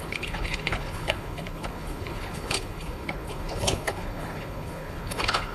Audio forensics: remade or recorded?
remade